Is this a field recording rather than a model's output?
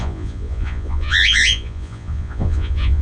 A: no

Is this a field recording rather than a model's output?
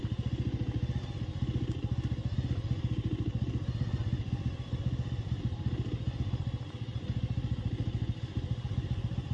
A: yes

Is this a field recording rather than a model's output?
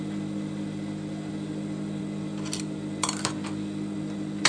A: yes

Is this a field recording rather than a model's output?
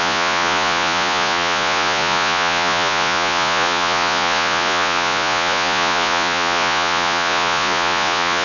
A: no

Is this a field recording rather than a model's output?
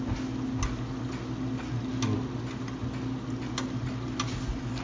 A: yes